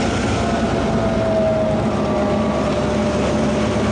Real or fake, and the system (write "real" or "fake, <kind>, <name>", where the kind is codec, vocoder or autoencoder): real